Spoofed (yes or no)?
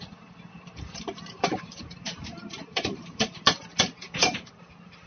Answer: yes